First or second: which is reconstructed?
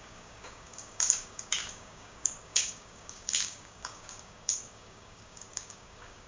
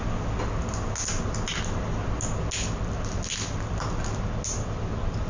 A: first